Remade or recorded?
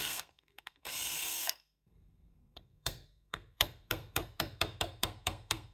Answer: remade